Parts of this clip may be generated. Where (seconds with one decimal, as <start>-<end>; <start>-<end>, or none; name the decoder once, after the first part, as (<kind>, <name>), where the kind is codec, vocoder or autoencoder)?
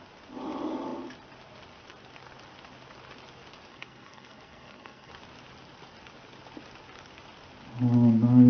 3.7-5.1 (codec, SNAC)